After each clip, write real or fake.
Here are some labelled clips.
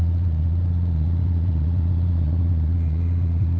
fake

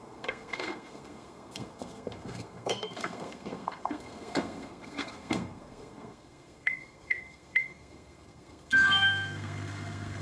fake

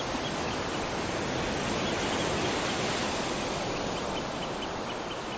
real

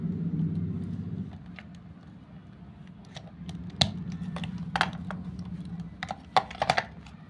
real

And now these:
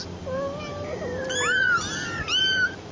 fake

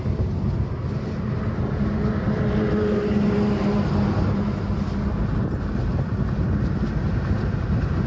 real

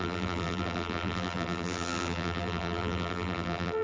fake